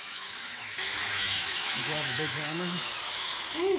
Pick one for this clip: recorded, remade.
remade